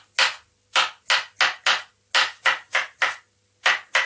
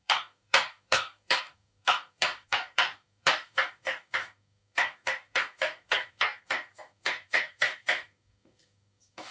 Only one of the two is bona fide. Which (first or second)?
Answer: first